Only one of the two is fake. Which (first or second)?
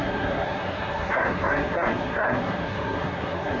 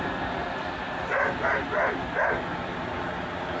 first